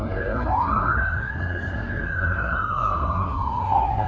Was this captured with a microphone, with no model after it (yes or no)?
no